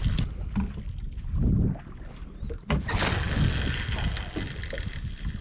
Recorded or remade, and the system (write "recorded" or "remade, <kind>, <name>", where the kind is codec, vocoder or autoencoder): recorded